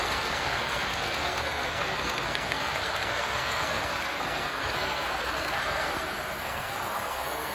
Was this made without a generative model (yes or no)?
no